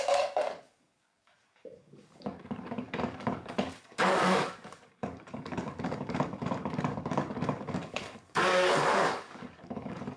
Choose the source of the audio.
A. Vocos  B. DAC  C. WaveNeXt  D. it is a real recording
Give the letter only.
B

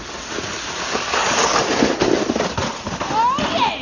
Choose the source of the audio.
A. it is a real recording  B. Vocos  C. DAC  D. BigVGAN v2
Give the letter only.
A